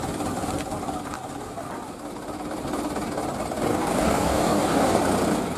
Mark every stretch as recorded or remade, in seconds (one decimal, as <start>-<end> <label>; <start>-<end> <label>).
0.0-3.7 recorded; 3.7-5.0 remade; 5.0-5.6 recorded